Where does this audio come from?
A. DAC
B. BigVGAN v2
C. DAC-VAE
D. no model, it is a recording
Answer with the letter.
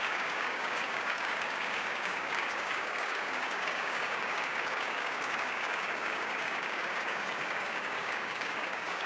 A